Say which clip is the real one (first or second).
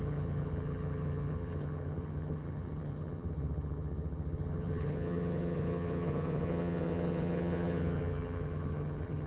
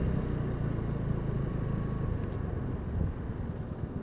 second